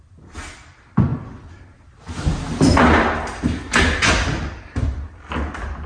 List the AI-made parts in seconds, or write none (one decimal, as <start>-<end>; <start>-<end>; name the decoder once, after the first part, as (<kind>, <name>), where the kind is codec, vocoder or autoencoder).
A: none